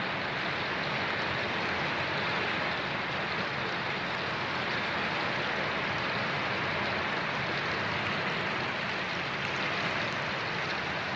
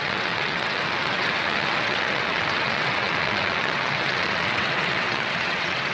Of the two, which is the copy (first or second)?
second